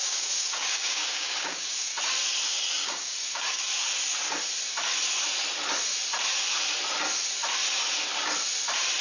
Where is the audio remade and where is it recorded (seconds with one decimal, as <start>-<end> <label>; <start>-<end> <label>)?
0.0-1.9 remade; 1.9-2.5 recorded; 2.5-3.7 remade; 3.7-9.0 recorded